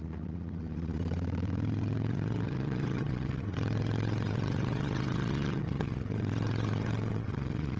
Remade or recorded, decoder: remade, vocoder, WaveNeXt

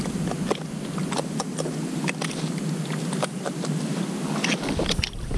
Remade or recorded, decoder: recorded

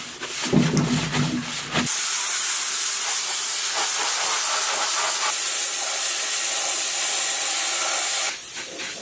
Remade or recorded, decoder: recorded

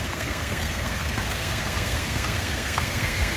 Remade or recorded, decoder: remade, codec, SNAC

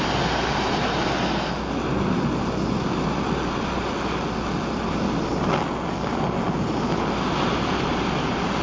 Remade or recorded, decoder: recorded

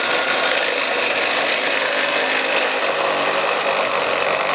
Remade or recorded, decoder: recorded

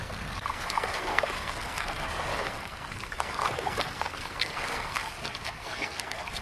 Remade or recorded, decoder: remade, codec, SNAC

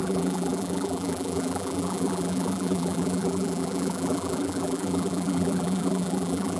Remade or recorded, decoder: remade, vocoder, BigVGAN v2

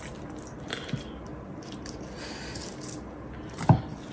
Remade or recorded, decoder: recorded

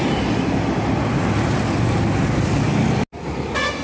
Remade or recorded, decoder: recorded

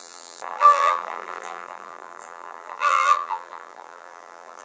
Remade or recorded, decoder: remade, vocoder, BigVGAN v2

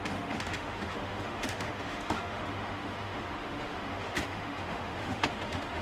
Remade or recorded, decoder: remade, autoencoder, DAC-VAE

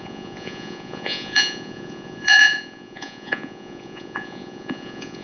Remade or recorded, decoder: remade, vocoder, Vocos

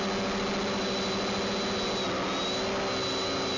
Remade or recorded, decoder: recorded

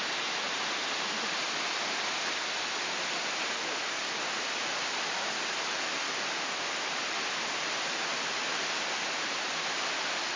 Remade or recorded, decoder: recorded